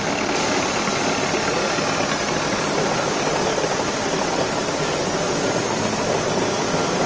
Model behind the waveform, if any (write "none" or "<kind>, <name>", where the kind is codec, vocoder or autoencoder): none